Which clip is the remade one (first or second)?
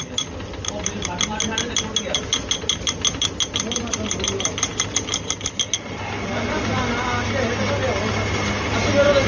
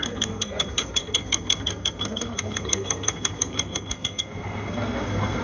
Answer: second